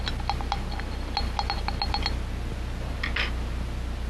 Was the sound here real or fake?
real